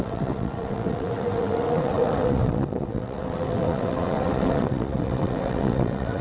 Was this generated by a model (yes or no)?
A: yes